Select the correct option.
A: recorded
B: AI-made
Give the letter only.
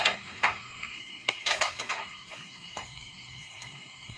B